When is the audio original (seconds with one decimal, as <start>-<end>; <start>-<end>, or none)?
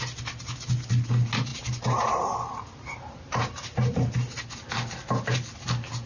0.0-1.5; 4.4-6.1